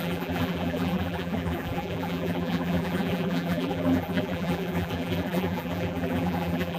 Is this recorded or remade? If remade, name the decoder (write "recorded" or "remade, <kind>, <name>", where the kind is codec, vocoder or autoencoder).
remade, vocoder, BigVGAN v2